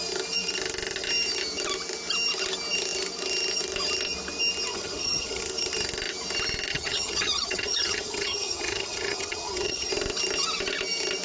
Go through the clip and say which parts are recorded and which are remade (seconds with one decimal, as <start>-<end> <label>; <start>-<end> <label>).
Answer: 0.0-4.7 recorded; 4.7-5.4 remade; 5.4-6.7 recorded; 6.7-9.9 remade; 9.9-11.2 recorded